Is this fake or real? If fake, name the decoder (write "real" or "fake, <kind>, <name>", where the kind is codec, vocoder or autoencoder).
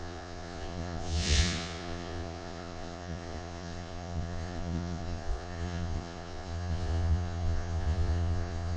fake, vocoder, Vocos